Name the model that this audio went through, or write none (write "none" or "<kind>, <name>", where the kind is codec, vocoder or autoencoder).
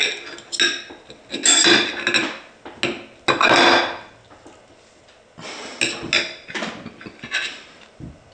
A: none